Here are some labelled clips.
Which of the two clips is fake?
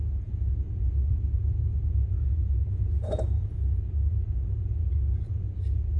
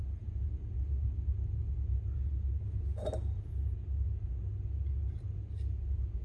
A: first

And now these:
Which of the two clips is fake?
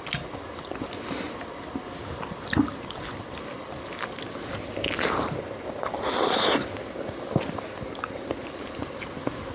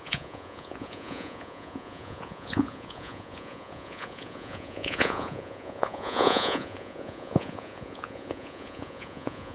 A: second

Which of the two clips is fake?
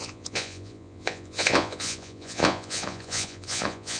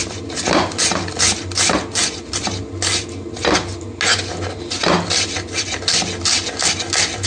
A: first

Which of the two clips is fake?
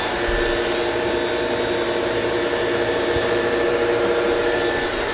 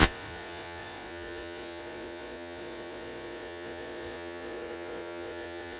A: second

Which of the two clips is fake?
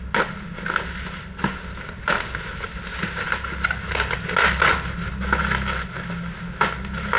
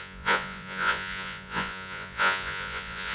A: second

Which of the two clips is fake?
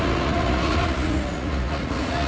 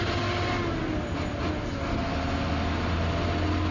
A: first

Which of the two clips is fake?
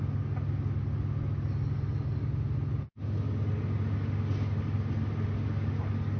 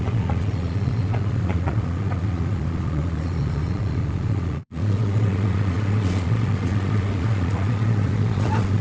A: second